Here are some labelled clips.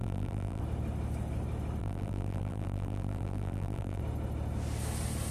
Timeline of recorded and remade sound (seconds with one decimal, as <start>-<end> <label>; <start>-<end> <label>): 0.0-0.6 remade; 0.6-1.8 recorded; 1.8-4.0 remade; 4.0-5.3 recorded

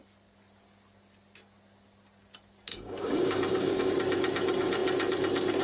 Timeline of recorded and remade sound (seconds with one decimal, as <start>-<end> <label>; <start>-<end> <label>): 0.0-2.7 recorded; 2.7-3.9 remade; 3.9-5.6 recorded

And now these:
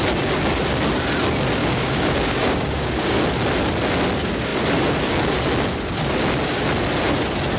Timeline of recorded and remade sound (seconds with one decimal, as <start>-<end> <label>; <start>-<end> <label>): 0.0-1.6 recorded; 1.6-3.2 remade; 3.2-7.6 recorded